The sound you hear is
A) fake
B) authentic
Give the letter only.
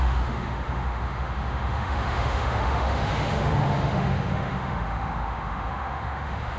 A